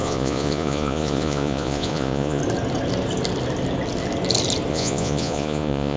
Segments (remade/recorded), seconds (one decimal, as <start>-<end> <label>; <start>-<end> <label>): 0.0-2.4 remade; 2.4-4.7 recorded; 4.7-6.0 remade